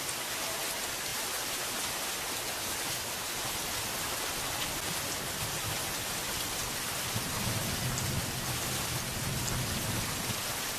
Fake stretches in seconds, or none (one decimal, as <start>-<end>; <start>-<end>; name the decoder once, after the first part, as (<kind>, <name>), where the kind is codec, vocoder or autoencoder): 1.1-2.1 (vocoder, BigVGAN v2)